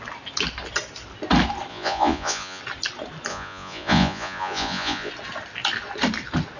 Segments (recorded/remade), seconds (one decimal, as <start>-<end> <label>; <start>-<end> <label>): 0.0-1.7 recorded; 1.7-2.6 remade; 2.6-3.3 recorded; 3.3-5.1 remade; 5.1-6.6 recorded